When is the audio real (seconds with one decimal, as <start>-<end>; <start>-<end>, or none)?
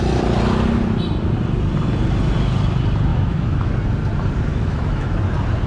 0.0-3.1; 3.7-4.5; 5.2-5.7